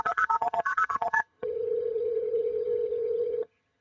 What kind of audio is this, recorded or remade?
remade